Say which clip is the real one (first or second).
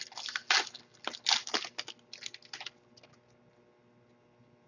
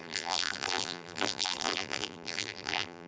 first